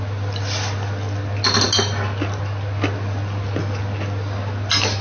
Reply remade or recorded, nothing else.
recorded